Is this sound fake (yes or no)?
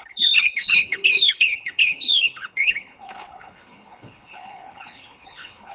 yes